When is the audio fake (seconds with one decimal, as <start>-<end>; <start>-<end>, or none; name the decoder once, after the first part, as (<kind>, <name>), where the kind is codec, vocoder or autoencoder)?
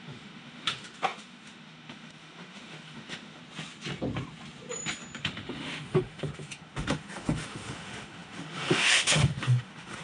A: 0.0-3.4 (autoencoder, DAC-VAE); 5.2-10.0